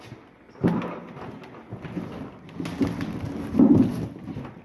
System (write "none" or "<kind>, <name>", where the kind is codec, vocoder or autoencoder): none